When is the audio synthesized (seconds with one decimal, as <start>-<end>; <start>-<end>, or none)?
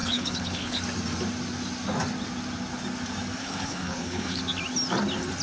0.0-0.8; 3.4-4.4